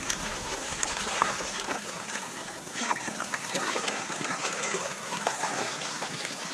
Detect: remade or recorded remade